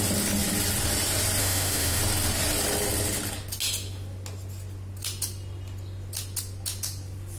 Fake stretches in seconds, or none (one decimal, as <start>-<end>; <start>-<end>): 1.4-2.0